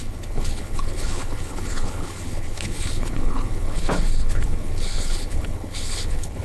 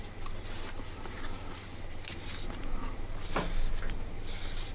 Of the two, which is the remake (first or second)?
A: first